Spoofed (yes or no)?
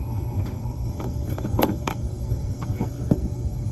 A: yes